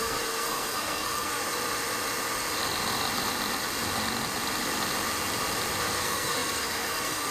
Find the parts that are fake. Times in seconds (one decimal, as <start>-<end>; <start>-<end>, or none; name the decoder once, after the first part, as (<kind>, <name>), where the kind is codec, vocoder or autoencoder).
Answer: 0.0-1.4 (codec, SNAC); 5.8-7.3